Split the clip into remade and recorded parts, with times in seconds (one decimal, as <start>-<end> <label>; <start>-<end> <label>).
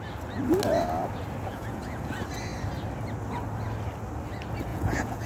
0.0-1.5 recorded; 1.5-2.1 remade; 2.1-4.7 recorded; 4.7-5.3 remade